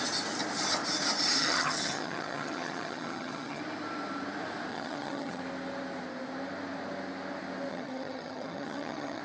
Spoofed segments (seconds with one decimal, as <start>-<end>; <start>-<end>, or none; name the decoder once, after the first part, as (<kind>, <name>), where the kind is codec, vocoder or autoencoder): 1.4-3.6 (vocoder, HiFi-GAN); 4.7-5.4; 7.7-9.2